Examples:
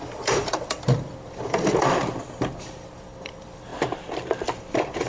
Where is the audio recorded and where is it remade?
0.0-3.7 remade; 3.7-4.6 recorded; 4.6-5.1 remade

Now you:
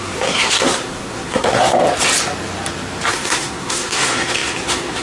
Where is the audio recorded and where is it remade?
0.0-1.7 remade; 1.7-3.1 recorded; 3.1-5.0 remade

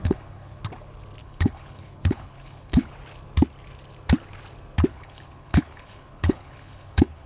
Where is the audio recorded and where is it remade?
0.0-0.6 remade; 0.6-1.2 recorded; 1.2-2.9 remade; 2.9-4.9 recorded; 4.9-7.3 remade

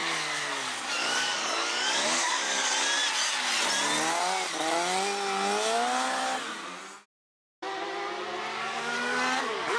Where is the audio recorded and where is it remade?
0.0-2.7 remade; 2.7-8.5 recorded; 8.5-9.8 remade

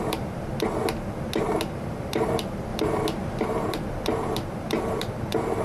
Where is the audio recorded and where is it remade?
0.0-0.5 remade; 0.5-1.8 recorded; 1.8-2.7 remade; 2.7-3.4 recorded; 3.4-5.6 remade

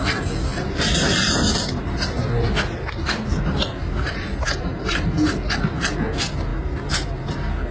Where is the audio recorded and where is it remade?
0.0-0.5 recorded; 0.5-4.5 remade; 4.5-6.5 recorded; 6.5-7.3 remade; 7.3-7.7 recorded

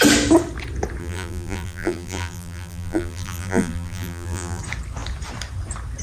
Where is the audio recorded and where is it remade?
0.0-1.0 recorded; 1.0-4.6 remade; 4.6-6.0 recorded

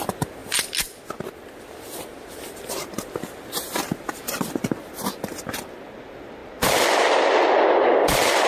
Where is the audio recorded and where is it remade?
0.0-8.5 recorded